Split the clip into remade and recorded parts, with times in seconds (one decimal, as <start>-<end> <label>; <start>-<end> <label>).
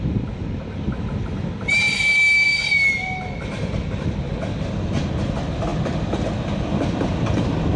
0.0-7.8 recorded